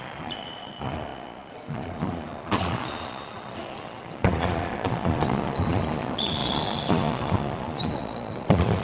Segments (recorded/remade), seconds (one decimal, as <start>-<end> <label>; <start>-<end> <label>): 0.0-8.8 remade